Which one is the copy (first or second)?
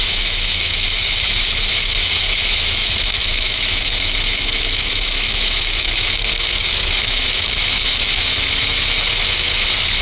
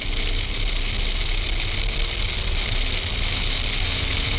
first